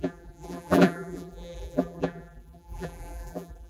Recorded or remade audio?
remade